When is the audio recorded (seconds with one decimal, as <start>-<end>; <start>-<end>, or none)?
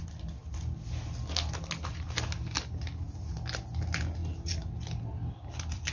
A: 0.0-5.9